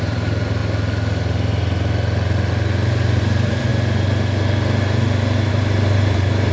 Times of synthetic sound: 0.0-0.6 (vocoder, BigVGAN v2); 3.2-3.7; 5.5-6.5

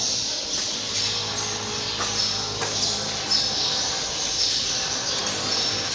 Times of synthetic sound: 0.0-0.8 (vocoder, BigVGAN v2); 4.3-5.2

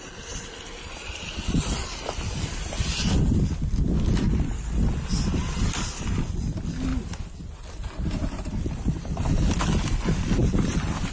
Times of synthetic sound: 10.4-11.1 (vocoder, BigVGAN v2)

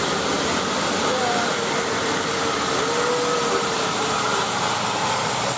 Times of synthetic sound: 3.4-4.7 (vocoder, BigVGAN v2)

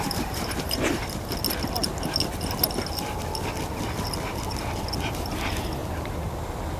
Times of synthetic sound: 0.0-1.0 (vocoder, BigVGAN v2); 5.1-5.8

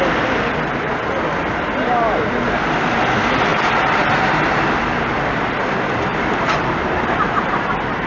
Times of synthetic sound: 3.5-4.8 (vocoder, BigVGAN v2); 6.1-8.1

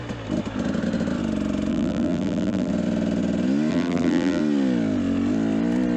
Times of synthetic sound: 1.7-2.7 (vocoder, BigVGAN v2); 3.7-4.4